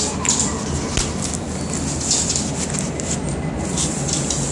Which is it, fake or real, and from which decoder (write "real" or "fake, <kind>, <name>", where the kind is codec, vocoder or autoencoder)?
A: real